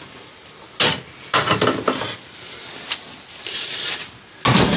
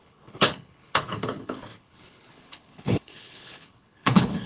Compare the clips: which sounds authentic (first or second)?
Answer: first